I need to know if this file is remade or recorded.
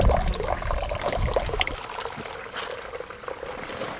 recorded